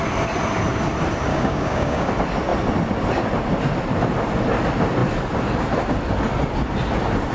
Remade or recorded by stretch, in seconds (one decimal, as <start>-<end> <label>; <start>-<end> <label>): 0.0-1.3 recorded; 1.3-2.1 remade; 2.1-7.3 recorded